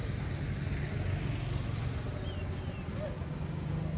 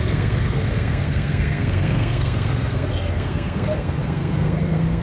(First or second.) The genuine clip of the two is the first